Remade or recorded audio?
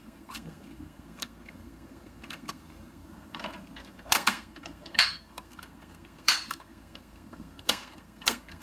remade